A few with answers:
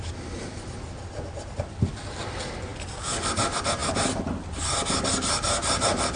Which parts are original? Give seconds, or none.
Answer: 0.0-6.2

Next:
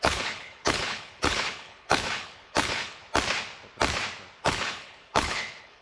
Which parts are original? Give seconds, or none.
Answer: 3.0-4.4

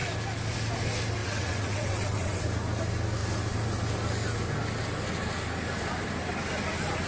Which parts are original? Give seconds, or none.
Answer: 0.0-1.2; 2.4-7.1

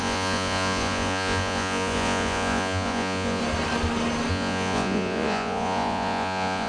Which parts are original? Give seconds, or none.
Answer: 3.4-4.3

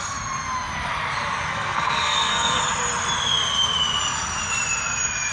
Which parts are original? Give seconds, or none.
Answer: 0.0-1.5; 2.6-5.3

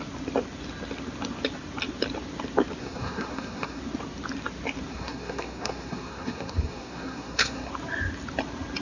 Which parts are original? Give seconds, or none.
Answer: 0.0-2.8; 3.8-4.9; 7.7-8.8

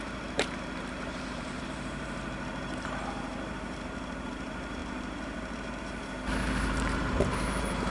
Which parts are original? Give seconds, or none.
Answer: none

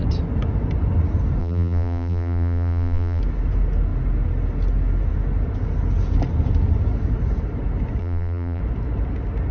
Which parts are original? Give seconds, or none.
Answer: 0.0-1.4; 3.2-8.0; 8.6-9.5